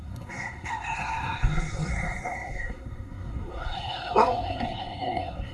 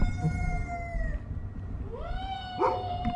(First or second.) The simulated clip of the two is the first